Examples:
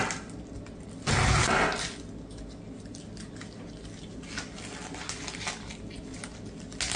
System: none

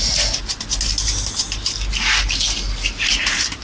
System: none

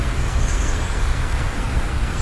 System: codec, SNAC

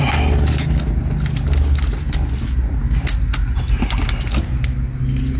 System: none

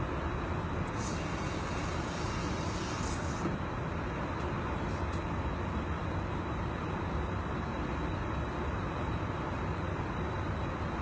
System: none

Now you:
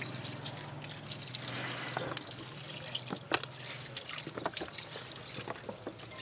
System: none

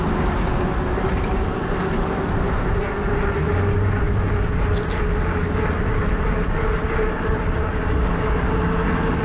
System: none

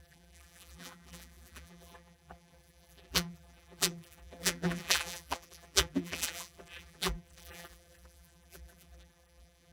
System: vocoder, BigVGAN v2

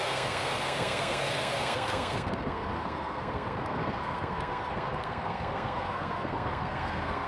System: codec, SNAC